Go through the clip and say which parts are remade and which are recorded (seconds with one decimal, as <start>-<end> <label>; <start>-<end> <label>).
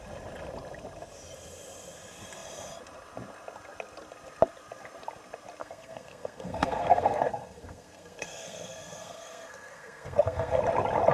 0.0-5.6 recorded; 5.6-10.6 remade; 10.6-11.1 recorded